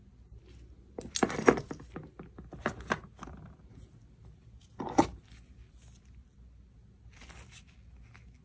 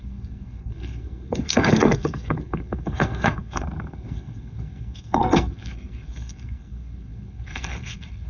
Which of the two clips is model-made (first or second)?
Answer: second